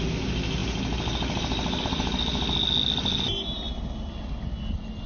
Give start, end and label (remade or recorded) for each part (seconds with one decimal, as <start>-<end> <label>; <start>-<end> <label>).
0.0-5.1 recorded